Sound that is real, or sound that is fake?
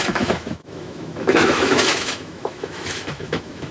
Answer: fake